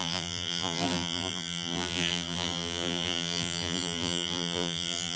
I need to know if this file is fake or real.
fake